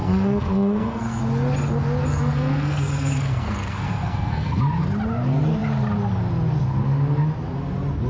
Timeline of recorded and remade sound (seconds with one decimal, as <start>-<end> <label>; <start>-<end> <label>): 0.0-1.2 remade; 1.2-2.1 recorded; 2.1-4.6 remade; 4.6-8.1 recorded